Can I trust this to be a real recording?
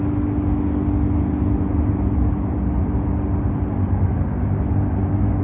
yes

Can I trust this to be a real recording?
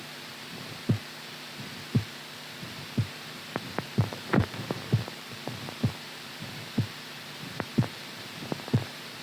no